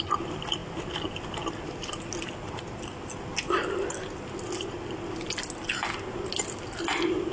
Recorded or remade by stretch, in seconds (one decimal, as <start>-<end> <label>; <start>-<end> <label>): 0.0-7.3 recorded